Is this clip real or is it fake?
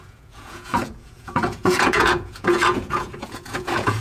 fake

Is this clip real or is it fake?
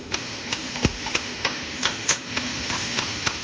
fake